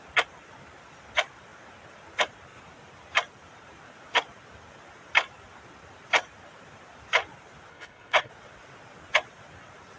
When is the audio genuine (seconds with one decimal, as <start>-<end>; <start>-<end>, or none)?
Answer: 0.0-7.7; 8.3-10.0